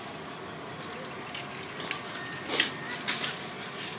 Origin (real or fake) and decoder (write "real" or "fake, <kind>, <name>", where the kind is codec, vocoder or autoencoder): real